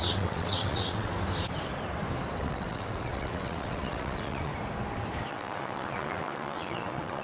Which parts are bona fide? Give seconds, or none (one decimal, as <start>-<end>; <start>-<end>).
1.1-2.4; 4.5-5.3